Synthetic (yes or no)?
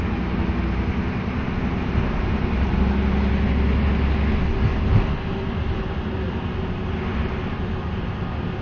no